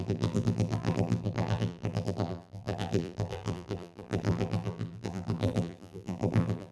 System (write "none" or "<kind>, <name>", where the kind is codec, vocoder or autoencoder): vocoder, BigVGAN v2